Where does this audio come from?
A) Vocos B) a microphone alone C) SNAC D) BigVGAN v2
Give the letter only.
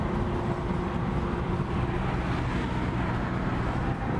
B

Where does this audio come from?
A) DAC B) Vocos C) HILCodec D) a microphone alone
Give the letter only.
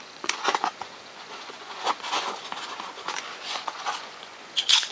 B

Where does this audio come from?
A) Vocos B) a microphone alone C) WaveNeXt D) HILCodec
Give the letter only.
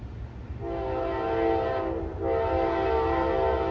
B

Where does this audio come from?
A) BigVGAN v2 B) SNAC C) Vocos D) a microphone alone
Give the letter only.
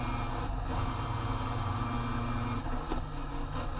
D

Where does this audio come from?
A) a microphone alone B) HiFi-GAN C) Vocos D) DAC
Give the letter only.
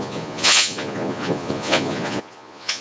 C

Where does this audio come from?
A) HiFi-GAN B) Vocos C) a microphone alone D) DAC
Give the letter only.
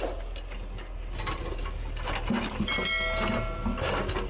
C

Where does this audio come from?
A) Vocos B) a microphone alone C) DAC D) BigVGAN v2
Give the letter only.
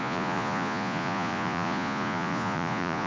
A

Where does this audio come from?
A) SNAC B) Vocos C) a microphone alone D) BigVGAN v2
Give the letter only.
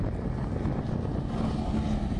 C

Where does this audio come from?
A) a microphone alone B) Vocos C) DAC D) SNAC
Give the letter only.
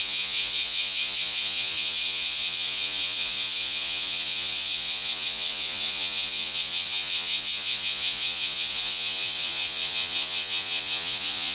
B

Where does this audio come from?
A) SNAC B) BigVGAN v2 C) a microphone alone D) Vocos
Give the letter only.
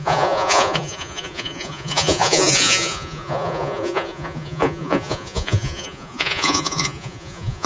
D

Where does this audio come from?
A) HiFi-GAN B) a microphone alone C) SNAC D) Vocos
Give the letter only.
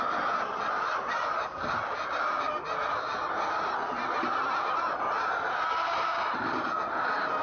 B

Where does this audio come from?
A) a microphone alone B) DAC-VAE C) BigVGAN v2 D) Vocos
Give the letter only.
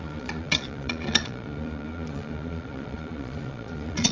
D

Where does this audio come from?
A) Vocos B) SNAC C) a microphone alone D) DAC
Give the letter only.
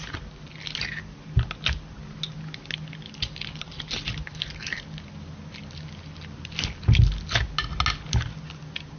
C